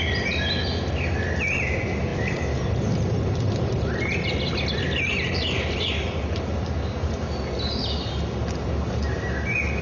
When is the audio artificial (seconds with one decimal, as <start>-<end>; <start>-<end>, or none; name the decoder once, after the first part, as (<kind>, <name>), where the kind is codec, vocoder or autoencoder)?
none